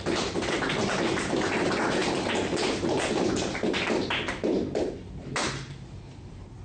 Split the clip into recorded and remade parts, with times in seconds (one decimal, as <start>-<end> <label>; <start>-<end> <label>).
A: 0.0-6.6 recorded